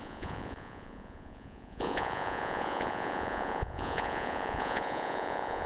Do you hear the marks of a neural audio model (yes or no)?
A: yes